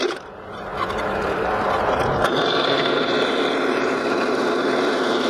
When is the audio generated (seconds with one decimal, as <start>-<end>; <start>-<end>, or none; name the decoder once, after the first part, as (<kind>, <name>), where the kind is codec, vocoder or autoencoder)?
0.0-0.7 (vocoder, BigVGAN v2); 2.1-5.3